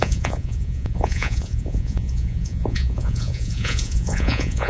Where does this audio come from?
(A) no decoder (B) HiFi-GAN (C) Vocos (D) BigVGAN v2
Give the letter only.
C